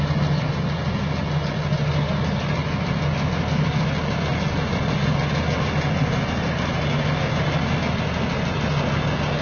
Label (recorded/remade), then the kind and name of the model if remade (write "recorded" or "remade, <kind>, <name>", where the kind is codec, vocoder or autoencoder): recorded